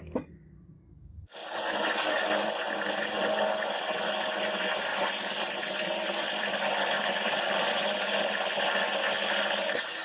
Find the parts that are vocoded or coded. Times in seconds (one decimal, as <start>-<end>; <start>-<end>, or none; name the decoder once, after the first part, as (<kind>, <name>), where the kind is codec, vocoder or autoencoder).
1.4-3.3 (vocoder, BigVGAN v2); 4.9-7.7